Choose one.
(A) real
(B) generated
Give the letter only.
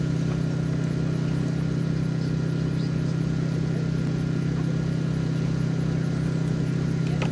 A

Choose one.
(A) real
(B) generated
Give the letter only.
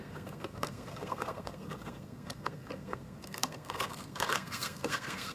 B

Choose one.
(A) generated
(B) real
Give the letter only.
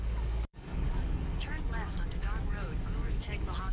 A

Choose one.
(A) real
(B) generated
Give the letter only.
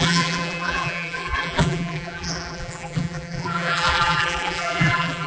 B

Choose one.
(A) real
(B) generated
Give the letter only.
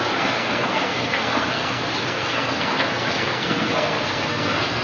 B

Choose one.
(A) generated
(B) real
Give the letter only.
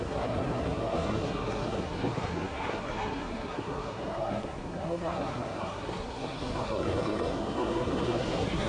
A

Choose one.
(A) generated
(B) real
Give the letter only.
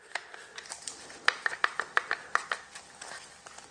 B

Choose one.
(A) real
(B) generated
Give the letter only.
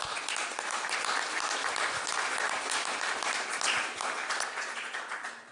A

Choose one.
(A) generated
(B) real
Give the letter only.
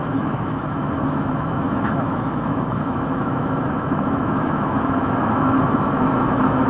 A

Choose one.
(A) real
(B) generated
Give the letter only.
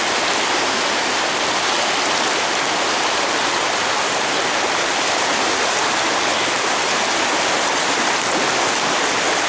A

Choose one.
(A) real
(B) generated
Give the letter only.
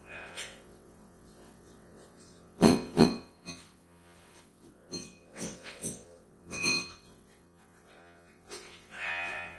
B